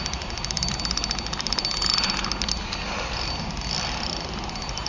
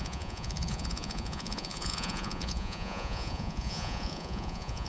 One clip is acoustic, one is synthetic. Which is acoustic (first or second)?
first